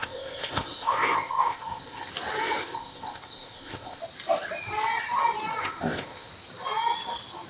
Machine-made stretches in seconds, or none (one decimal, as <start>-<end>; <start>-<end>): 0.0-2.1; 2.6-4.0; 5.6-6.3

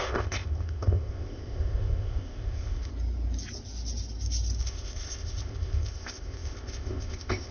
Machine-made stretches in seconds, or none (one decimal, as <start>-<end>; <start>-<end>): 0.0-2.9; 4.6-7.5

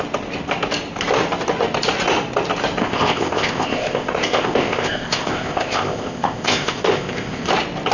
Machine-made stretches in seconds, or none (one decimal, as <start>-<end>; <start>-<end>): 2.8-7.5

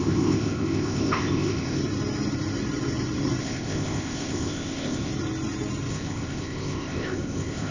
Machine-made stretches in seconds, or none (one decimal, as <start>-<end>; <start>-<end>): 0.0-1.8; 3.4-5.1; 5.9-7.7

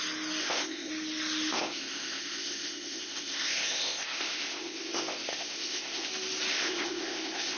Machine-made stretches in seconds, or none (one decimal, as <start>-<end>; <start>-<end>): 0.4-0.9; 1.5-6.1; 6.5-7.6

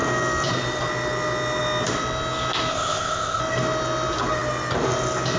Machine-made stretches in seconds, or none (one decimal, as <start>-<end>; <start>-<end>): 2.7-3.4

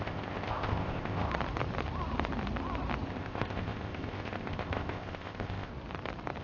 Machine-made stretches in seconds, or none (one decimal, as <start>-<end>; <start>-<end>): 0.0-1.3; 3.1-5.7

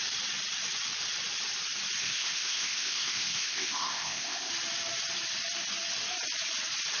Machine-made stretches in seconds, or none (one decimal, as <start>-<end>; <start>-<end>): 2.0-4.5